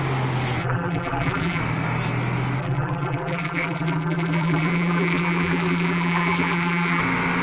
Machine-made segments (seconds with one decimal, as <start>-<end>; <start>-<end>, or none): 0.6-1.6; 2.6-7.0